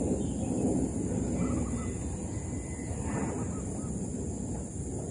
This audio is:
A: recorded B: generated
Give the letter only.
A